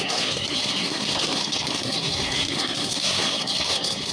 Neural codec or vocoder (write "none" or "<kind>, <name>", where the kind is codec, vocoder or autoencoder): codec, SNAC